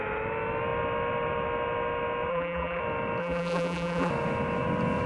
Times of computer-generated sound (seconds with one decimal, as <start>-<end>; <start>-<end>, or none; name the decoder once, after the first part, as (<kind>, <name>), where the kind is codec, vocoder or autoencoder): 2.3-2.8 (vocoder, BigVGAN v2); 3.2-4.1